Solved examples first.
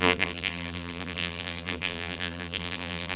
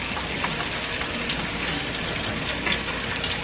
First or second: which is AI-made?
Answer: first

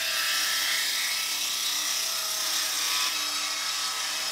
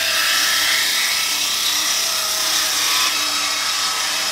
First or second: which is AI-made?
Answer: second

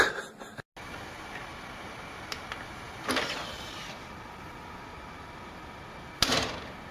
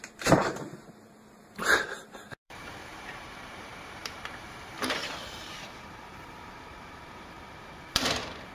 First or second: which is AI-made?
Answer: second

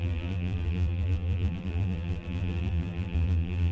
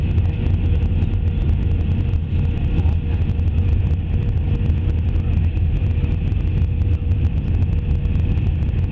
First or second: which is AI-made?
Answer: first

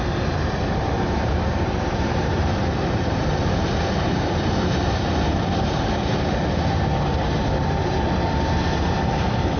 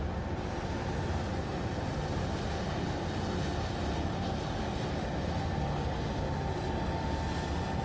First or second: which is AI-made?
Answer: first